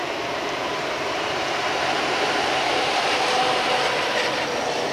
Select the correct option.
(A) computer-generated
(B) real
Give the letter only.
A